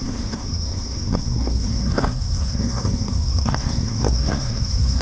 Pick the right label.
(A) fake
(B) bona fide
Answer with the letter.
A